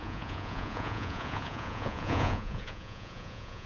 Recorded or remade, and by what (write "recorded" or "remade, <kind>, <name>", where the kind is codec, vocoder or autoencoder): remade, vocoder, Vocos